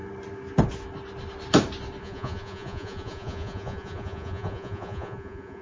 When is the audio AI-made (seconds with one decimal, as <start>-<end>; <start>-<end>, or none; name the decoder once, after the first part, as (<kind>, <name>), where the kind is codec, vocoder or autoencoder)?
2.0-5.6 (vocoder, Vocos)